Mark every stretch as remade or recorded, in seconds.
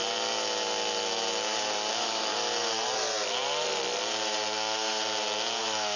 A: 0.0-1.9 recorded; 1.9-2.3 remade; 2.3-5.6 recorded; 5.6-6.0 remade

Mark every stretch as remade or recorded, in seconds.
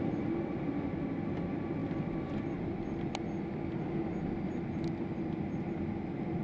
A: 0.0-6.4 recorded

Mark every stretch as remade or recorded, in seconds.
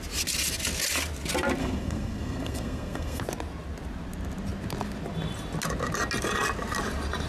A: 0.0-1.6 recorded; 1.6-3.2 remade; 3.2-7.3 recorded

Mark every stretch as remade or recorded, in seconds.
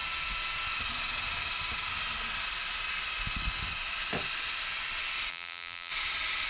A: 0.0-5.3 recorded; 5.3-5.9 remade; 5.9-6.5 recorded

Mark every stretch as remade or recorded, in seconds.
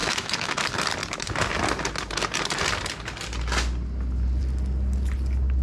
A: 0.0-0.6 remade; 0.6-5.6 recorded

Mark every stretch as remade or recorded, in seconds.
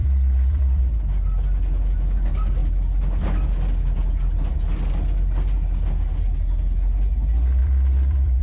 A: 0.0-0.8 remade; 0.8-7.6 recorded; 7.6-8.4 remade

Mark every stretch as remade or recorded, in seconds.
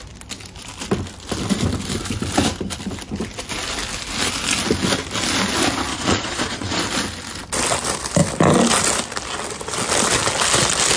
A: 0.0-5.9 recorded; 5.9-6.8 remade; 6.8-11.0 recorded